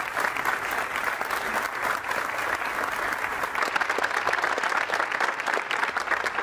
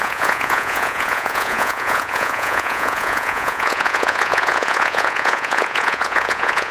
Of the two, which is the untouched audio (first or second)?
first